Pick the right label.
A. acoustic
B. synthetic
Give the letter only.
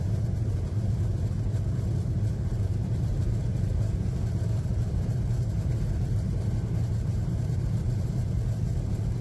B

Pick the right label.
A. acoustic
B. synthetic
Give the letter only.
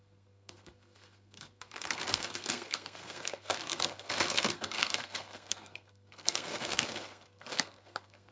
B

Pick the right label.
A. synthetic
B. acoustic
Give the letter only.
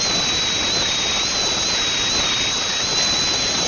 B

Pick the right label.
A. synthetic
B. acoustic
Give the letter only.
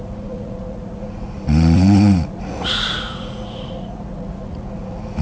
A